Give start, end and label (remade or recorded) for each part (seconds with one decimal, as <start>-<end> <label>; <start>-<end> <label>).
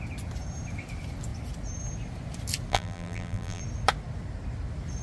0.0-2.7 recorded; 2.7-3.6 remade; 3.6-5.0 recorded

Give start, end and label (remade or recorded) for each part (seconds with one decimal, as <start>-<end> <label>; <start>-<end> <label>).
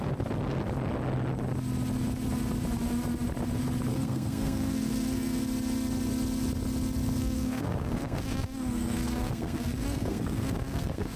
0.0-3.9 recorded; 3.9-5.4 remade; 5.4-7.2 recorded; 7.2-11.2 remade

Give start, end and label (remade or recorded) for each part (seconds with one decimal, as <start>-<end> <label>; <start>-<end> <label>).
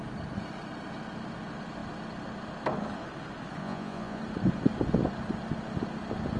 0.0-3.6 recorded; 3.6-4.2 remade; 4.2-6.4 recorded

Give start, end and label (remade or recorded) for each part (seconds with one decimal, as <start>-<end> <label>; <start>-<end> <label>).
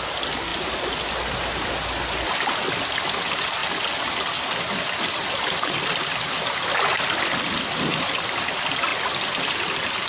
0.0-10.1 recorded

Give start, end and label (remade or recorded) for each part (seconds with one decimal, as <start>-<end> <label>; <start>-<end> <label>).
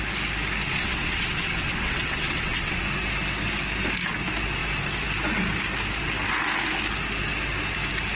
0.0-0.7 recorded; 0.7-2.8 remade; 2.8-8.2 recorded